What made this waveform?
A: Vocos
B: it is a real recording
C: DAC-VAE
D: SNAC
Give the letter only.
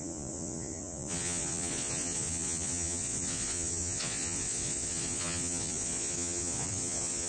A